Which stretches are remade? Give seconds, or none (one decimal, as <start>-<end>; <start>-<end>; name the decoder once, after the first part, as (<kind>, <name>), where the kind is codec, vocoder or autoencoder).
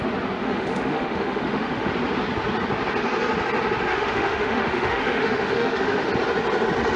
0.4-1.9 (autoencoder, DAC-VAE); 3.9-6.1